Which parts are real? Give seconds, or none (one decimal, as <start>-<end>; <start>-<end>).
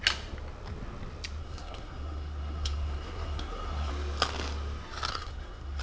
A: 0.0-1.4; 3.9-5.1